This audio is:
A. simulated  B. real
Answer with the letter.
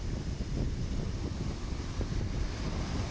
B